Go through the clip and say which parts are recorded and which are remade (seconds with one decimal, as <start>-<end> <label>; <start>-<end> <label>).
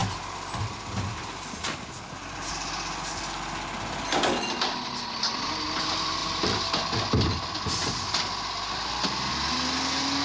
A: 0.0-10.2 recorded